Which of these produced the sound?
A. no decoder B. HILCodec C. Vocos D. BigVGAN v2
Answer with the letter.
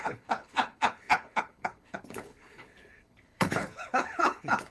B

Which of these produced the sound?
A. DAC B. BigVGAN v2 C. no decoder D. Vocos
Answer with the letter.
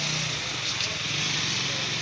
C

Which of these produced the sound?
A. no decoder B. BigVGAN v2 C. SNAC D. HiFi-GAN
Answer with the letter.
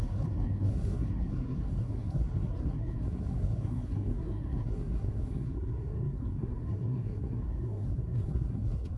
C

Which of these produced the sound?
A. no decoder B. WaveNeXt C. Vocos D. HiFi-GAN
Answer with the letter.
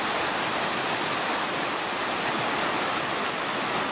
A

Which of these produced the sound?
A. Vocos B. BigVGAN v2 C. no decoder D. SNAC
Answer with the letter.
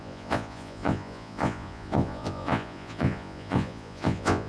A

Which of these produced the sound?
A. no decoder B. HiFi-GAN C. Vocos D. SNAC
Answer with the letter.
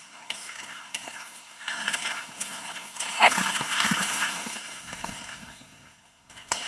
D